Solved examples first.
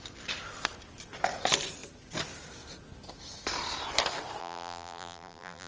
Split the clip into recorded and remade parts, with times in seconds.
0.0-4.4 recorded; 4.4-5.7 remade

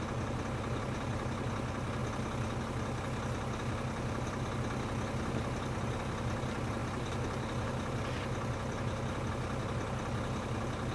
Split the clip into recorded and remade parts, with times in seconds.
0.0-10.9 recorded

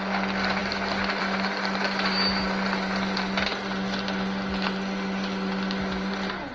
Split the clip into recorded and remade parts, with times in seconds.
0.0-6.5 recorded

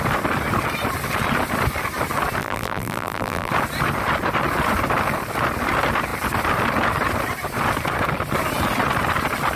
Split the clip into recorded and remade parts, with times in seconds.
0.0-2.4 recorded; 2.4-3.5 remade; 3.5-9.6 recorded

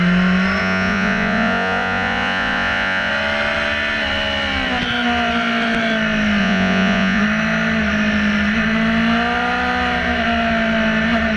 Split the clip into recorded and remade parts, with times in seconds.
0.0-0.6 recorded; 0.6-3.1 remade; 3.1-6.4 recorded; 6.4-7.2 remade; 7.2-11.4 recorded

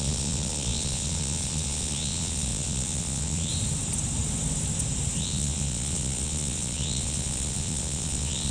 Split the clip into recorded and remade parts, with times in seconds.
0.0-3.5 remade; 3.5-5.2 recorded; 5.2-8.5 remade

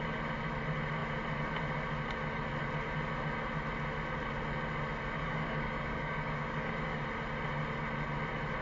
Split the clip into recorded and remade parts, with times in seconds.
0.0-5.2 recorded; 5.2-7.0 remade; 7.0-8.6 recorded

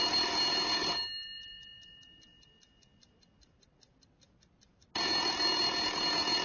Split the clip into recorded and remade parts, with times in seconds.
0.0-6.4 recorded